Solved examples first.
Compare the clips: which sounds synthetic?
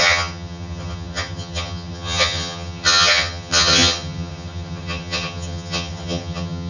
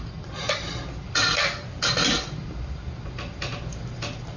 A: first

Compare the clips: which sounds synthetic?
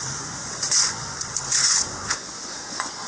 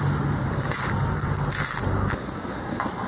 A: first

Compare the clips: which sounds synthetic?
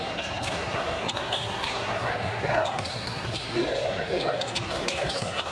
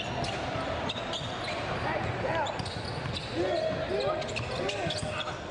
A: first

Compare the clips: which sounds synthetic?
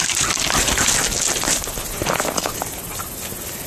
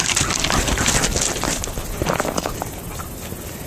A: second